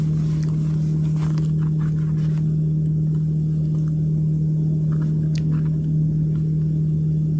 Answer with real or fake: real